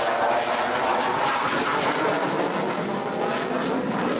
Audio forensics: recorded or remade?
recorded